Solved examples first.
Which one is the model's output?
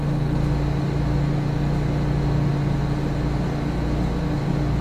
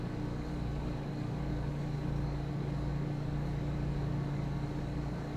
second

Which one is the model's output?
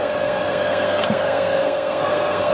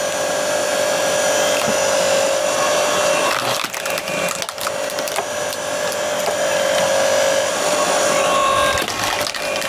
first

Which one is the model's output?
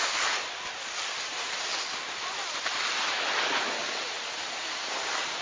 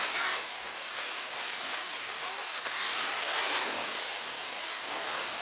second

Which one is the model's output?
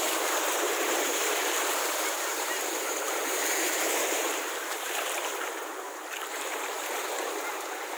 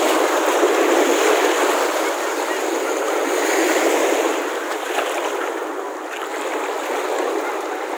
first